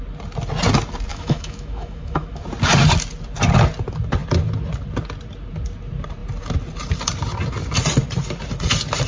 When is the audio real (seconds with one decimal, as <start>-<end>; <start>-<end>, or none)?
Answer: 0.0-1.1; 2.4-9.1